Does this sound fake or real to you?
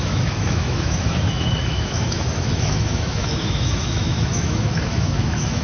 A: fake